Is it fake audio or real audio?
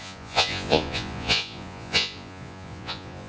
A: fake